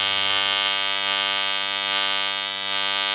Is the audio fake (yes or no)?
no